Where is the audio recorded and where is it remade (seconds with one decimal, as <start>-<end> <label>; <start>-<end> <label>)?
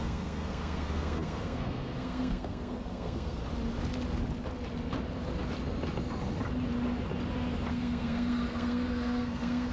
0.0-3.4 remade; 3.4-7.7 recorded; 7.7-9.7 remade